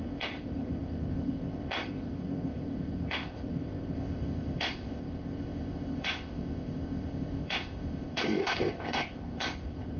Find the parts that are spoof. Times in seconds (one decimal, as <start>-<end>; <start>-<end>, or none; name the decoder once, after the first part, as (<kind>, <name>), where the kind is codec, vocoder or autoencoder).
0.0-10.0 (codec, ZipCodec)